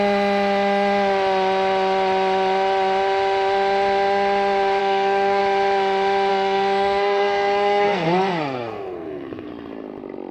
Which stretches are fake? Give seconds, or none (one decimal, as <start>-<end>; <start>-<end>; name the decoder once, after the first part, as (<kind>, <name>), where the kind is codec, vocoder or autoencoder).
4.8-5.4 (codec, SNAC); 6.3-9.5